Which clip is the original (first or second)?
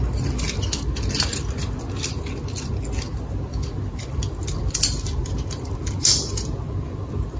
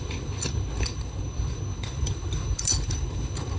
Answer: first